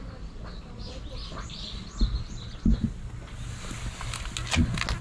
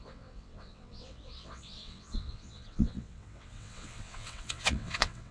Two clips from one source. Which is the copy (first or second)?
second